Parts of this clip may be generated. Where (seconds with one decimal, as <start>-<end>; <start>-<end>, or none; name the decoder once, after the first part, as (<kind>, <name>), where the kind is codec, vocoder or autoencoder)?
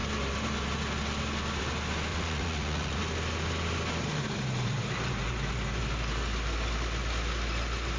2.1-3.0 (vocoder, Vocos)